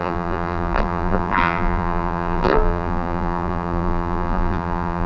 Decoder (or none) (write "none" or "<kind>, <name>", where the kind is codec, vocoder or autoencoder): vocoder, BigVGAN v2